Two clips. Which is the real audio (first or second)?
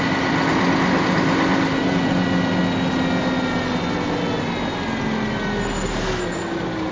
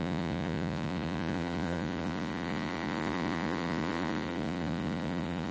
first